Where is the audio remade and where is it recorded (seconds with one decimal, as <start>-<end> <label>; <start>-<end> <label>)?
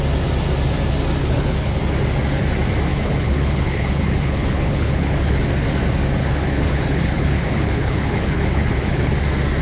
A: 0.0-1.2 recorded; 1.2-1.8 remade; 1.8-2.9 recorded; 2.9-5.4 remade; 5.4-6.2 recorded; 6.2-9.2 remade; 9.2-9.6 recorded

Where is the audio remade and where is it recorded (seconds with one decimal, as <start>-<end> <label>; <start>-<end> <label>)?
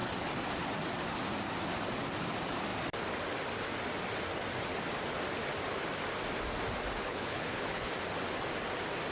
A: 0.0-7.0 recorded; 7.0-7.9 remade; 7.9-9.1 recorded